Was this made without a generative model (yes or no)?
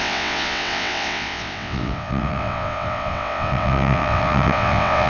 no